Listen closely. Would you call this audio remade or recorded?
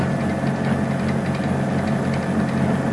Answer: recorded